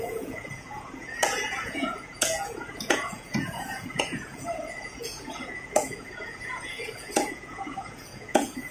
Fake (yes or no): yes